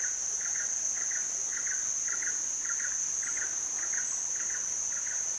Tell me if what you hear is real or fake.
real